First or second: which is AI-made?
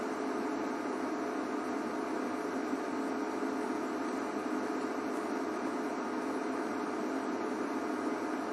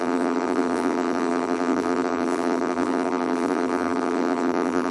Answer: second